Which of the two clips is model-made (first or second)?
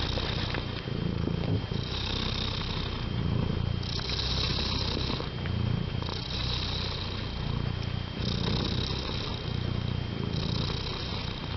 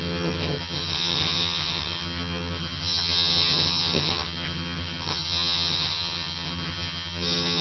second